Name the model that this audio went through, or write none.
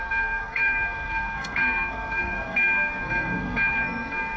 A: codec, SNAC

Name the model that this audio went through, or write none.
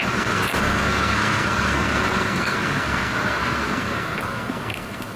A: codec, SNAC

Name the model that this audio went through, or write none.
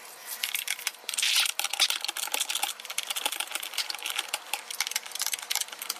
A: none